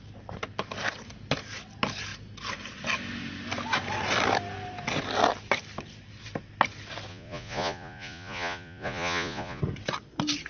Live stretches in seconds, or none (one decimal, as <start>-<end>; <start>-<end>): 0.0-7.1; 9.6-10.5